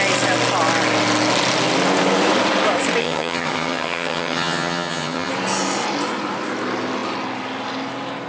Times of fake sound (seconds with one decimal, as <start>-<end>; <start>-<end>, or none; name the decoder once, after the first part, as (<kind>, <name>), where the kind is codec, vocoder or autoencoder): 3.0-5.3 (vocoder, HiFi-GAN)